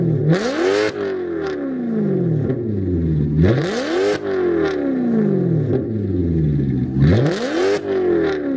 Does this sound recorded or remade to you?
recorded